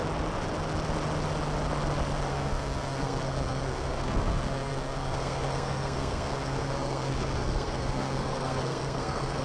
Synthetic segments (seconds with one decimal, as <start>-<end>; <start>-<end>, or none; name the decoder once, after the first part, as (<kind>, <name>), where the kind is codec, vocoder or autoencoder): 2.3-9.4 (codec, SNAC)